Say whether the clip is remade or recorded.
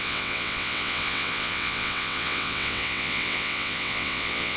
remade